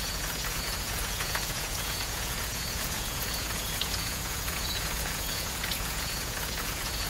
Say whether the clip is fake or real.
fake